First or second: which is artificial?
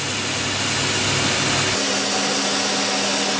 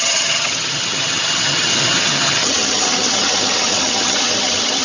second